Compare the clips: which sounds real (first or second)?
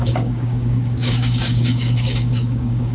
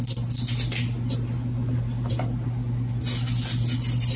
second